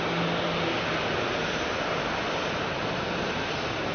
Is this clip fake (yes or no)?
no